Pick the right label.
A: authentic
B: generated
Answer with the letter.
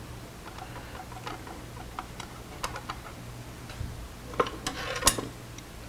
A